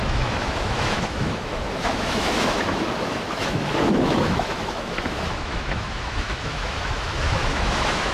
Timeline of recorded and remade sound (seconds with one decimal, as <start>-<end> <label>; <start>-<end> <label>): 0.0-8.1 remade